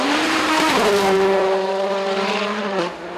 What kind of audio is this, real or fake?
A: fake